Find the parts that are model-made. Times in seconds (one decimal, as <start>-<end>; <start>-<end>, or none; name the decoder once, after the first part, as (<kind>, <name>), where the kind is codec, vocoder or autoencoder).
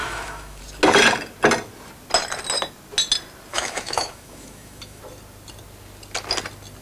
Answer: 0.0-0.6 (autoencoder, DAC-VAE); 3.5-5.0